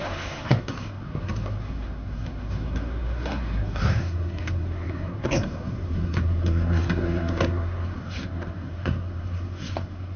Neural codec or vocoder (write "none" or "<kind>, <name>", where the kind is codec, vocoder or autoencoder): codec, SNAC